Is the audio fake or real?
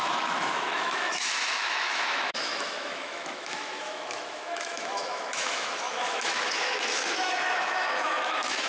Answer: fake